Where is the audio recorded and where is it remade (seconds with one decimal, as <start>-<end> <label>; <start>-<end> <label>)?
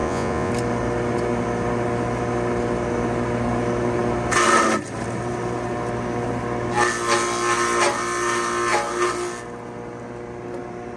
0.0-0.5 remade; 0.5-11.0 recorded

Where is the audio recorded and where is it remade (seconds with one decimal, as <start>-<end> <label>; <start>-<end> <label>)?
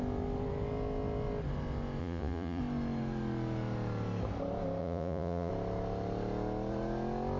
0.0-2.0 recorded; 2.0-2.6 remade; 2.6-4.8 recorded; 4.8-5.5 remade; 5.5-7.4 recorded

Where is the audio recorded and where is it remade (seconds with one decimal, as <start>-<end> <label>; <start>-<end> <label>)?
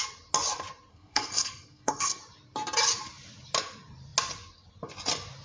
0.0-0.9 recorded; 0.9-2.2 remade; 2.2-5.4 recorded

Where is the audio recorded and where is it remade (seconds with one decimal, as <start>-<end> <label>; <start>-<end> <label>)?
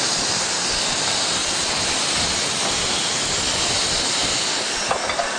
0.0-1.4 remade; 1.4-4.6 recorded; 4.6-5.4 remade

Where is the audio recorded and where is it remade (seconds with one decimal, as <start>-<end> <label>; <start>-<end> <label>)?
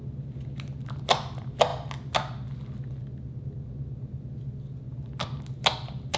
0.0-6.2 recorded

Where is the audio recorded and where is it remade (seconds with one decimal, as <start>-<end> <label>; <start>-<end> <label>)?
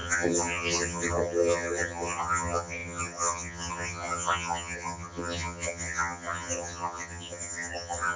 0.0-8.2 remade